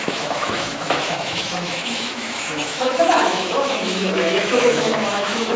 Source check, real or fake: fake